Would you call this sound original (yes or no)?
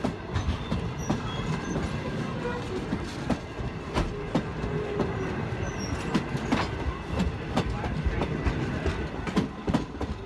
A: yes